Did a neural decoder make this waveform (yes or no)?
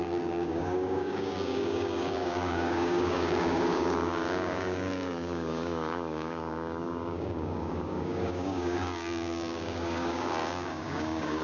yes